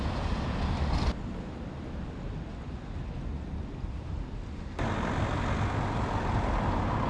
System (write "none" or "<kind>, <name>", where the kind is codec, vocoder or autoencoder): none